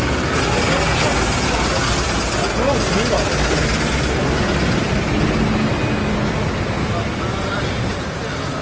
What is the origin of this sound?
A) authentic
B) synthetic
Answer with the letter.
A